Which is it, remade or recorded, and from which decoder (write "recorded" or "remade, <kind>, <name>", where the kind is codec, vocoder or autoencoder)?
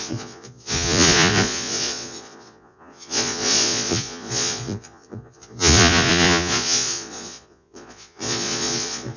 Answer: remade, vocoder, Vocos